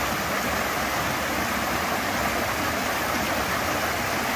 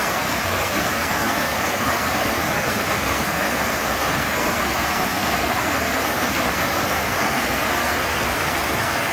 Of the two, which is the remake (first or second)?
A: second